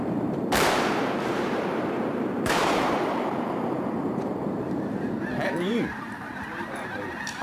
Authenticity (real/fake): fake